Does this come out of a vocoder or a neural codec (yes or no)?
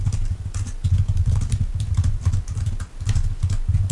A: no